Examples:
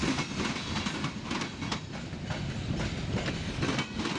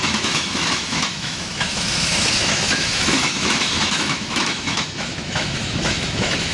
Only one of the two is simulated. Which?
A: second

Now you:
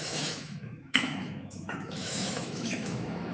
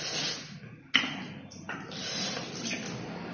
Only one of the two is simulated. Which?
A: first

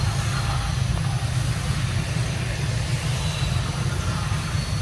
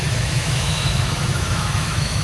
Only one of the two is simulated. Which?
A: second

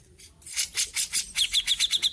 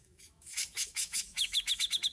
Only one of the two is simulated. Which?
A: second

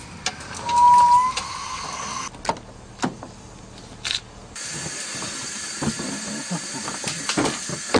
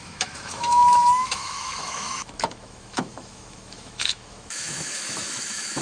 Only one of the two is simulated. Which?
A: second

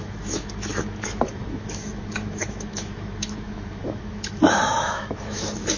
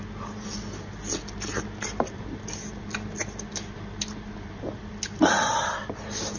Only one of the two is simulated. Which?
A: first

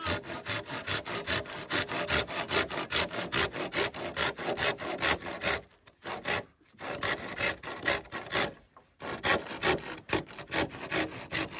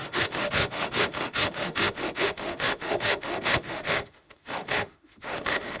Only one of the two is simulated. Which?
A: second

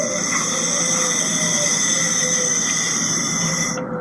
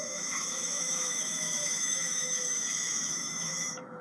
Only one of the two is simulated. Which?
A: second